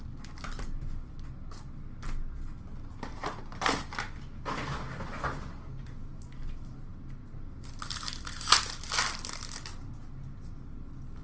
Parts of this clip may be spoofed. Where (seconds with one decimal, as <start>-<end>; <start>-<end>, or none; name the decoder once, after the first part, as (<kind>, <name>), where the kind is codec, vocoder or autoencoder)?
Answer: none